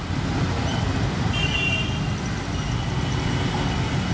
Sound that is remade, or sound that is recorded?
recorded